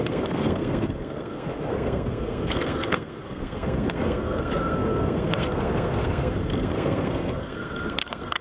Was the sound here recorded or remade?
remade